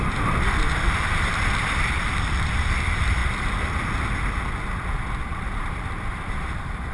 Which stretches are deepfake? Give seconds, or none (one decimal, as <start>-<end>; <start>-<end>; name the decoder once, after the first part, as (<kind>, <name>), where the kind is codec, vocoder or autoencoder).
0.0-3.2 (vocoder, BigVGAN v2); 5.2-6.9